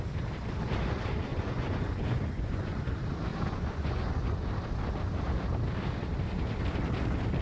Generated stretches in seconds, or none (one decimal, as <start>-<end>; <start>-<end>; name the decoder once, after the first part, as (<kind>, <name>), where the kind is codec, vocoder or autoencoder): 1.3-2.8 (vocoder, Vocos); 3.3-4.5